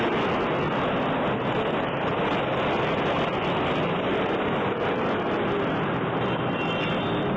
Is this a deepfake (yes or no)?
no